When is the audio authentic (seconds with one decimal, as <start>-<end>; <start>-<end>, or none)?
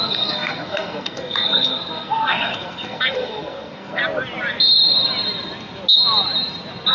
4.0-6.9